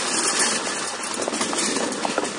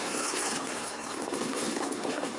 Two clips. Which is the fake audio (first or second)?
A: second